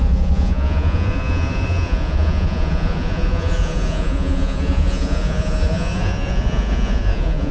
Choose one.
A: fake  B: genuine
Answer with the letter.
A